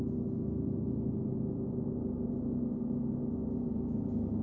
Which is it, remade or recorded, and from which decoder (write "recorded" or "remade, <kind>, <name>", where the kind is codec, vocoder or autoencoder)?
recorded